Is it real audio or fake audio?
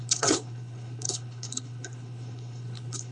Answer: fake